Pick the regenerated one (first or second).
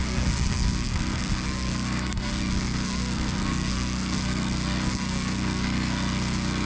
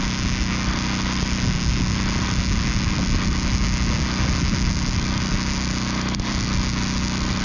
first